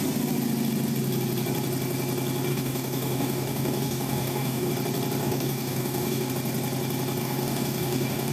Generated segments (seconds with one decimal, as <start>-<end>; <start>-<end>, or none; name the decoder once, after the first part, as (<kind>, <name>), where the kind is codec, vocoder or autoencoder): 2.5-4.7 (codec, DAC); 5.2-6.3; 7.2-8.3